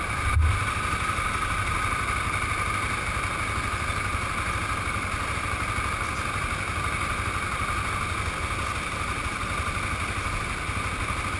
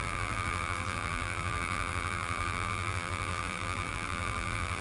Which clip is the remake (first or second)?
second